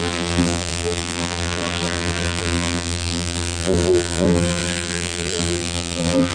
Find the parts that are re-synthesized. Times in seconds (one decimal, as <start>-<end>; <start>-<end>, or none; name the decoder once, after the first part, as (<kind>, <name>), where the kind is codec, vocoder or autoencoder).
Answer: 0.0-6.3 (vocoder, BigVGAN v2)